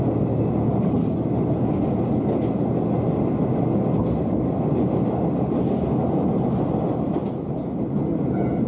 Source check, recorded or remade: recorded